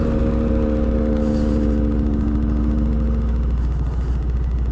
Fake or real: real